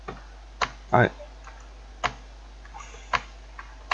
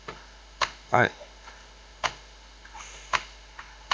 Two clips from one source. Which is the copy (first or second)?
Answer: second